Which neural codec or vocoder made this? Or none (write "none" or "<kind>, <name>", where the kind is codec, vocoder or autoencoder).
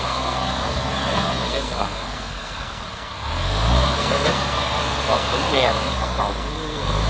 codec, SNAC